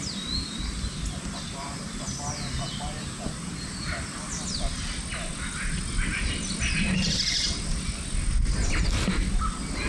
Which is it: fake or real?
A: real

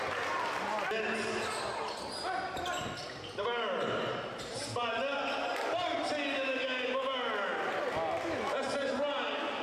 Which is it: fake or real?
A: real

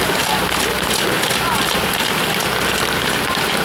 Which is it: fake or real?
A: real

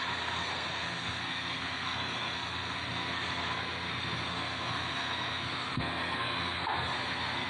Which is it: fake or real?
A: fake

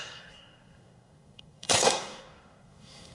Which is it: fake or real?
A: fake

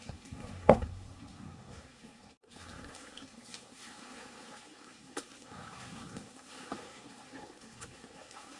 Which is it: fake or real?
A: fake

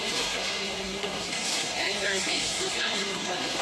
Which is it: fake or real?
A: fake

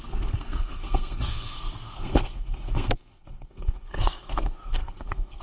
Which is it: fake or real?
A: fake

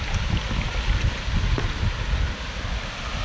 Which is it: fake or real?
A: real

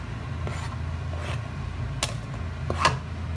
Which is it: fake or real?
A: real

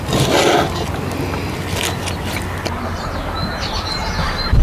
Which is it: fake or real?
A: real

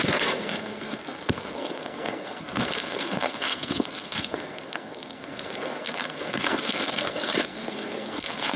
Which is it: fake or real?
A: fake